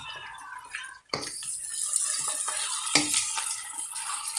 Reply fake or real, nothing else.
real